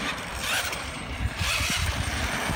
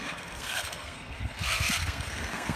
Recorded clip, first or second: first